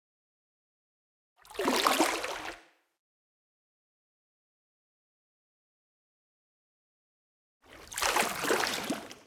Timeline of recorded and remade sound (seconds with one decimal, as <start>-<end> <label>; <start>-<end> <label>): 0.0-9.3 recorded